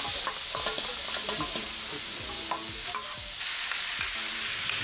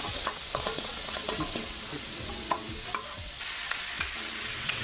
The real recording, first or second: first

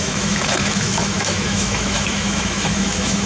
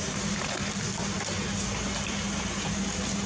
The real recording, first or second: second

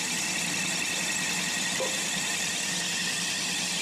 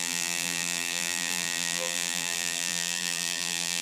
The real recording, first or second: first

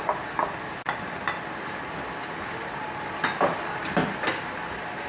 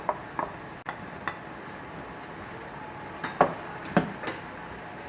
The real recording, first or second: second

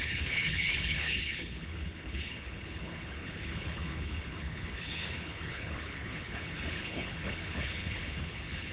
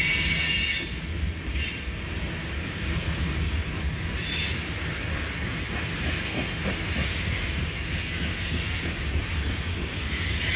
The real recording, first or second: second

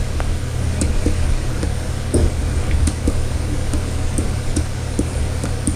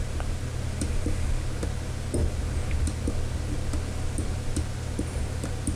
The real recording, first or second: second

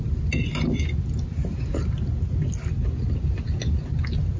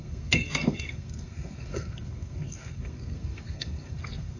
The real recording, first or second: first